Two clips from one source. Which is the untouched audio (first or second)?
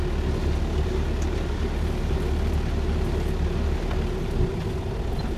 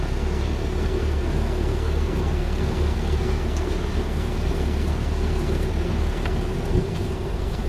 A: first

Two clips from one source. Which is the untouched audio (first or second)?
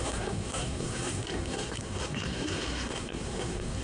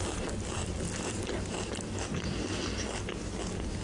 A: second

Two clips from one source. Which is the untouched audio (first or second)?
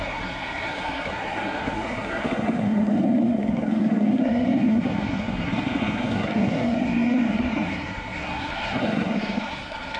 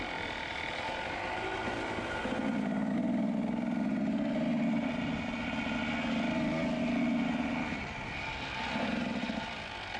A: second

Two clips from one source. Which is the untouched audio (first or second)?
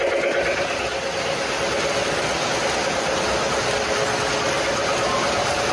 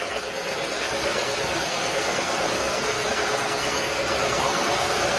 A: first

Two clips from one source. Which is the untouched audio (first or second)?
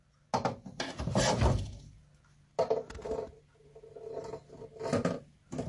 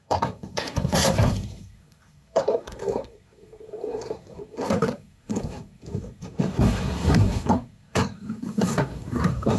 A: first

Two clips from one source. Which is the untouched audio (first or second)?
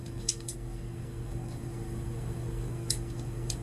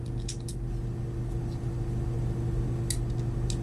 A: second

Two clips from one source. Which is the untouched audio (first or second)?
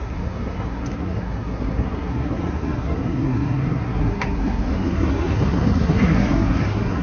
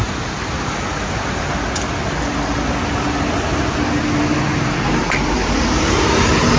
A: second